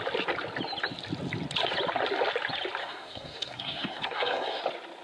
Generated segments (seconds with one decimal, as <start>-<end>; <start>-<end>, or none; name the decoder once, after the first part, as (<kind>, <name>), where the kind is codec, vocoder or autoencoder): 2.8-4.6 (codec, SNAC)